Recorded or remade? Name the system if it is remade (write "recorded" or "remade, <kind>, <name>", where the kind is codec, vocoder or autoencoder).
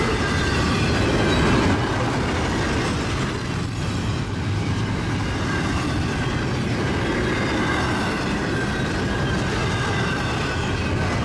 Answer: recorded